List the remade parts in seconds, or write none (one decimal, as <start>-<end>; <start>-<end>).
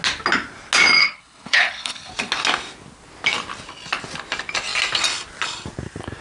1.0-2.1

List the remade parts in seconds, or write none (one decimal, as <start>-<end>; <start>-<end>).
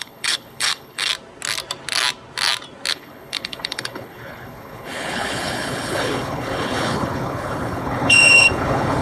0.0-1.1; 2.9-9.0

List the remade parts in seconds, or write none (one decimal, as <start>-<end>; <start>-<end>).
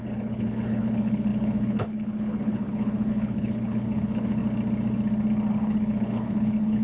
0.0-4.4; 5.5-6.8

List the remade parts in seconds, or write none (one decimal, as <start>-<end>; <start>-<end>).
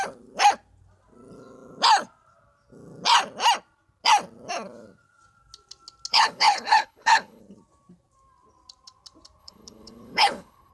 6.1-7.4; 9.4-10.7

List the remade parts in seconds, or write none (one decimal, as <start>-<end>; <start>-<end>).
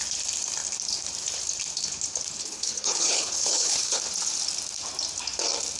2.4-4.0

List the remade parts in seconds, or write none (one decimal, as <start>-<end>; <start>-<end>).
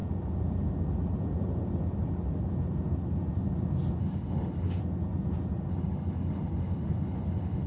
4.0-4.8; 5.7-7.7